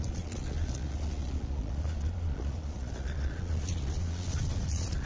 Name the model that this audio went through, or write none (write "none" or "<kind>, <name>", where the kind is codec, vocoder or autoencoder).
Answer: vocoder, Vocos